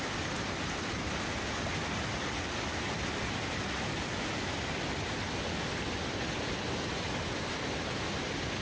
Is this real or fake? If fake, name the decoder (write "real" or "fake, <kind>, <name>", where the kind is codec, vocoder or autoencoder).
real